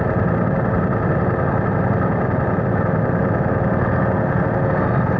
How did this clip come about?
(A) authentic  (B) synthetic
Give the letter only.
A